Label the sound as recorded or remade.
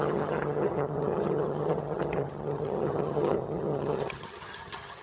remade